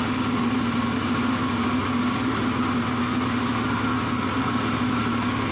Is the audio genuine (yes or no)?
yes